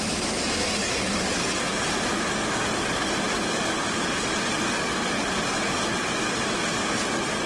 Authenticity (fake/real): real